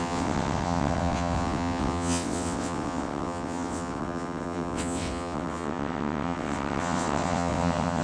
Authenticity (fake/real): fake